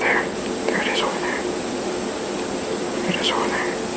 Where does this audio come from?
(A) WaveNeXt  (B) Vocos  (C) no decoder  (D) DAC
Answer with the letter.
C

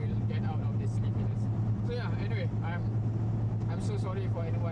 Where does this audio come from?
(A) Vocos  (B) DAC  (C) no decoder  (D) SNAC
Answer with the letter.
C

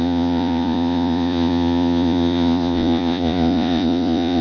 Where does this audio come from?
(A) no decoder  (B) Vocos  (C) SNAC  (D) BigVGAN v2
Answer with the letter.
B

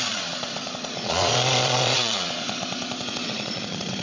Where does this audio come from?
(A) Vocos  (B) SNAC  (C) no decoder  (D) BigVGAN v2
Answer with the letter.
A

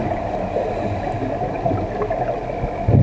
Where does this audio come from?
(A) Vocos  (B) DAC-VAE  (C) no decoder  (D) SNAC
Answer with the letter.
C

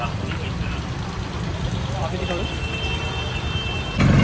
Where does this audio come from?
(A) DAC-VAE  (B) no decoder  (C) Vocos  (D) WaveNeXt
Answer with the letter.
B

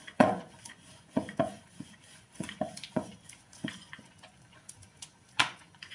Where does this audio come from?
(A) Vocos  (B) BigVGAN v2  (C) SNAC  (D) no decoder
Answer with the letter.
A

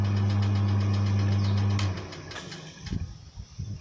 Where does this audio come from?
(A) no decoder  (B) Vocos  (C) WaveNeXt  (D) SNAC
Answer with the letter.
A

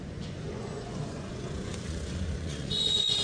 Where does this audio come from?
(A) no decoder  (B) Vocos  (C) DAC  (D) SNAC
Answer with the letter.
B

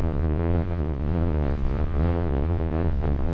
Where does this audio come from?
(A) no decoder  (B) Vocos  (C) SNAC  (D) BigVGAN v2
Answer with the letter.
B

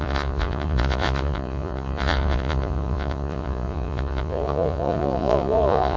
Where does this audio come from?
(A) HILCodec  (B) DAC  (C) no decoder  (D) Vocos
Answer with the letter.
D